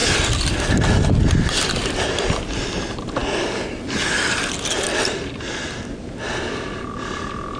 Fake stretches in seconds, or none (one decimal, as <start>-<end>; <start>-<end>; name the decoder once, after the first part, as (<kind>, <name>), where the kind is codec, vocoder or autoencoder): none